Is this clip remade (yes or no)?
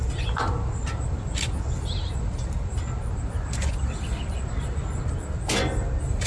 no